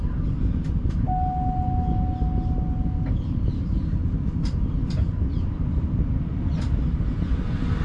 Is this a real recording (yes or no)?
yes